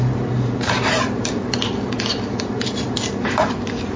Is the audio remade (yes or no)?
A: yes